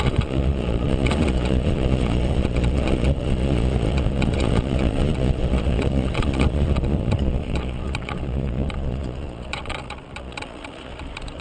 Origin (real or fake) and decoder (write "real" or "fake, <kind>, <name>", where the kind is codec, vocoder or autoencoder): fake, vocoder, Vocos